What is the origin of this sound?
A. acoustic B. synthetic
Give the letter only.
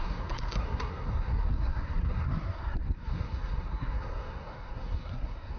B